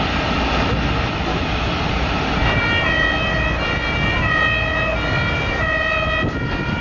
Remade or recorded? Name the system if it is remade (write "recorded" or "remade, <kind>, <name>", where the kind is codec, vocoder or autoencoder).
recorded